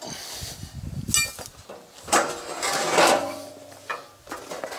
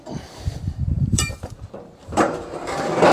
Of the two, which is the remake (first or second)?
second